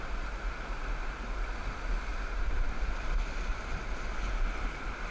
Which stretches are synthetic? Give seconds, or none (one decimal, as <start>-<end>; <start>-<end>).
2.1-4.1